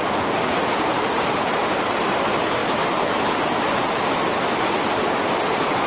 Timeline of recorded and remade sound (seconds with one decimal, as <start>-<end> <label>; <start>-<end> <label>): 0.0-5.9 recorded